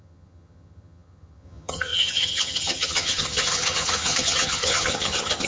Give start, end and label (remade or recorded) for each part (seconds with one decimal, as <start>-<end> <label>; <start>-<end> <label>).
0.0-5.5 remade